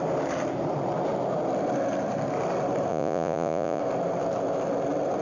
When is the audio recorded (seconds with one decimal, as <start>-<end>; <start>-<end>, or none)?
0.0-2.9; 3.8-5.2